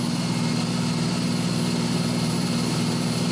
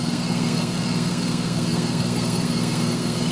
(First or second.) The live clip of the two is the first